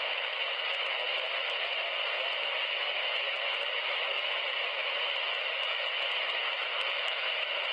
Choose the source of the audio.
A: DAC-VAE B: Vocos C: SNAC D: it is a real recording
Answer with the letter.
A